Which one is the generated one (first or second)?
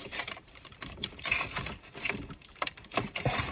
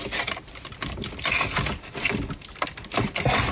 first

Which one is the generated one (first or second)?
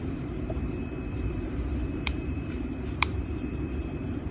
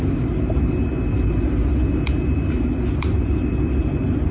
first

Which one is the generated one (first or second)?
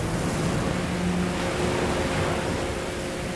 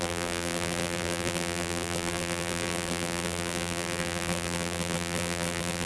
second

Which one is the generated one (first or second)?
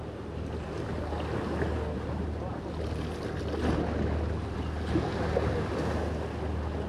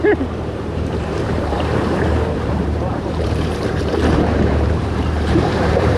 second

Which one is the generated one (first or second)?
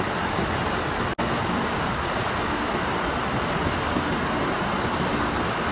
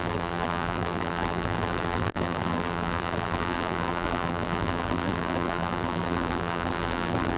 second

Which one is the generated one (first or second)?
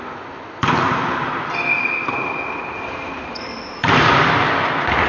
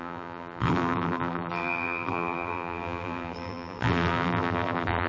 second